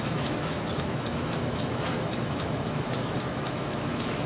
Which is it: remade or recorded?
remade